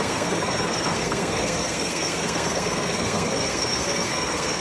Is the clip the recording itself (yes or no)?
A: no